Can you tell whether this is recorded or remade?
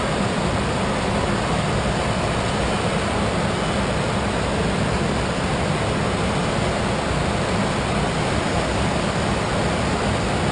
recorded